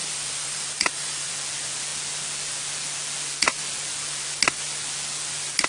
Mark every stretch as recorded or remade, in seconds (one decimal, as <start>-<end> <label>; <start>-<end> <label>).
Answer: 0.0-1.3 remade; 1.3-5.7 recorded